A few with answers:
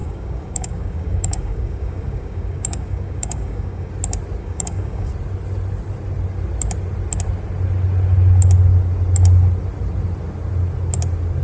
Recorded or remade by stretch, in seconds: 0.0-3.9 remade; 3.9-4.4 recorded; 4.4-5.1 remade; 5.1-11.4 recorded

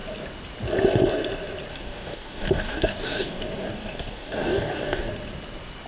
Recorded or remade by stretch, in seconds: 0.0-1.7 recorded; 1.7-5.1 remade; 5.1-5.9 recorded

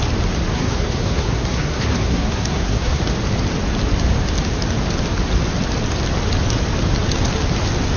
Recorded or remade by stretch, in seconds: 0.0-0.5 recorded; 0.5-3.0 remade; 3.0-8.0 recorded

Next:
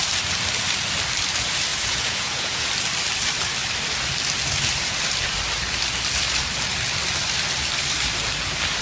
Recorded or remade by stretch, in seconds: 0.0-1.7 recorded; 1.7-2.7 remade; 2.7-8.8 recorded

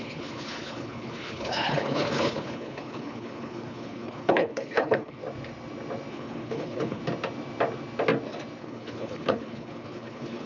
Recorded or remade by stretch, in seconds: 0.0-5.2 remade; 5.2-6.1 recorded; 6.1-7.0 remade; 7.0-8.6 recorded; 8.6-10.5 remade

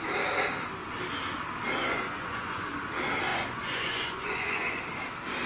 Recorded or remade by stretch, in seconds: 0.0-1.8 recorded; 1.8-2.7 remade; 2.7-3.3 recorded; 3.3-4.8 remade; 4.8-5.5 recorded

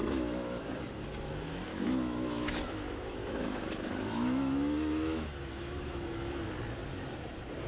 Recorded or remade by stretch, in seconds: 0.0-0.8 remade; 0.8-1.7 recorded; 1.7-6.3 remade; 6.3-7.7 recorded